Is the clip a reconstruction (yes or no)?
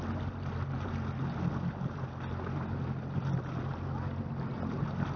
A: no